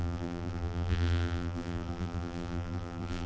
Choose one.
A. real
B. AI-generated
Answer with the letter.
B